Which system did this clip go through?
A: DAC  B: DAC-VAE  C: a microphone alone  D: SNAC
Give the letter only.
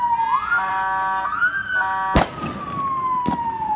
C